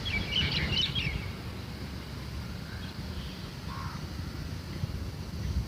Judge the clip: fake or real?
real